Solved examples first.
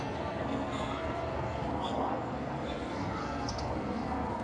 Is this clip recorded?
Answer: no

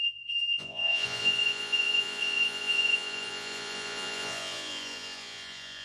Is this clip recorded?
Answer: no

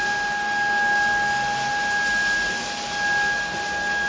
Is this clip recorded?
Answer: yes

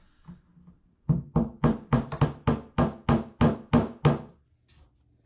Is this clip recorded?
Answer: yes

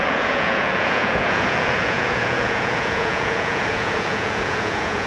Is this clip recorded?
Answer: no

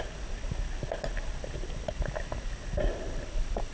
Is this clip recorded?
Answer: yes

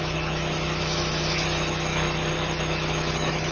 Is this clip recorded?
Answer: no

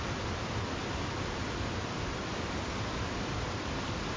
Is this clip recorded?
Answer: no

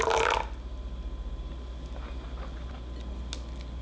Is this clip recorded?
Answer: yes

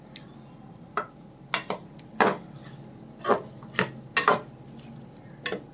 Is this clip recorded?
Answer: yes